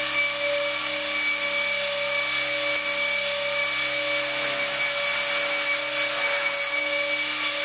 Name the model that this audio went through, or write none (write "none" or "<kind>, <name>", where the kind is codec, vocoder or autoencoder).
none